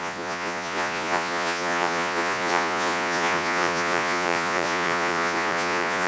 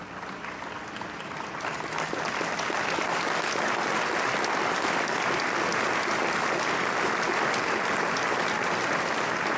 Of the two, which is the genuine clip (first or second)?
second